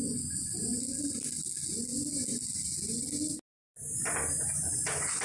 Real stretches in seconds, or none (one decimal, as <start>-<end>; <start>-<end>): 0.0-5.2